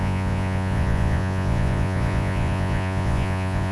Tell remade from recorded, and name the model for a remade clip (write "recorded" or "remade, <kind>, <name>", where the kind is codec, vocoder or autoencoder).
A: remade, vocoder, Vocos